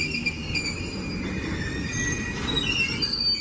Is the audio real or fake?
real